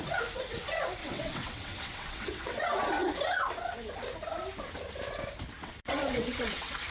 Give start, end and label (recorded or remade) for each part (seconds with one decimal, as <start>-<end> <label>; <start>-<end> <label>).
0.0-1.0 recorded; 1.0-2.6 remade; 2.6-5.6 recorded; 5.6-6.9 remade